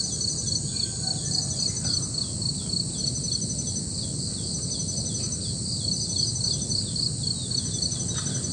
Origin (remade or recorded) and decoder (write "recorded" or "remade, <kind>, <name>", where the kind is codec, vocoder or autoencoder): recorded